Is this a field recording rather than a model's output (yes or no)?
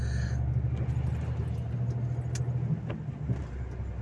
yes